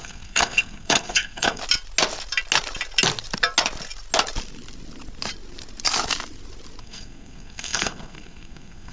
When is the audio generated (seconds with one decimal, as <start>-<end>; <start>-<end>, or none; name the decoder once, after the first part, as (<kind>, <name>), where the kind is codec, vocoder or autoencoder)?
0.0-1.6 (codec, SNAC); 6.8-8.9

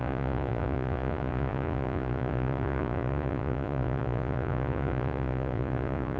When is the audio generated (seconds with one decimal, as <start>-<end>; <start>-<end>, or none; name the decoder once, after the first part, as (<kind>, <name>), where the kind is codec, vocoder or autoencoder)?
0.0-6.2 (vocoder, Vocos)

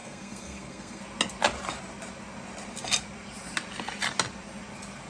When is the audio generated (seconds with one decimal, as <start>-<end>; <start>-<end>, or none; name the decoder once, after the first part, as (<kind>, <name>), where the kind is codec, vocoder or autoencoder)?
0.0-1.0 (codec, SNAC)

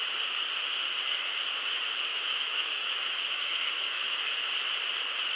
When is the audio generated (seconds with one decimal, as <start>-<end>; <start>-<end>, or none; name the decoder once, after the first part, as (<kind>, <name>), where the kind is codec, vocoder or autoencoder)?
2.1-4.5 (autoencoder, DAC-VAE)